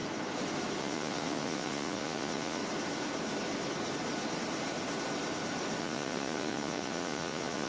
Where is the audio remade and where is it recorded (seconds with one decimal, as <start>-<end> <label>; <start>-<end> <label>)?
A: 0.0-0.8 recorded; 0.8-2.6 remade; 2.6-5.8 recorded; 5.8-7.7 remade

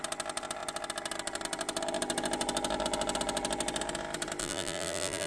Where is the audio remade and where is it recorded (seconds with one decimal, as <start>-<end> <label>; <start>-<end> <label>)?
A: 0.0-4.4 recorded; 4.4-5.3 remade

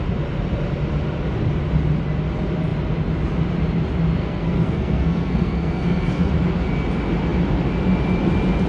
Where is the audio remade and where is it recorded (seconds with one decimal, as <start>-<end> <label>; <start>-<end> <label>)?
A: 0.0-4.2 recorded; 4.2-6.3 remade; 6.3-8.7 recorded

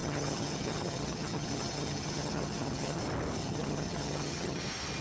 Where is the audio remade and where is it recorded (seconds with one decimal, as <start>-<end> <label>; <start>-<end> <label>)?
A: 0.0-3.0 remade; 3.0-3.4 recorded; 3.4-4.6 remade; 4.6-5.0 recorded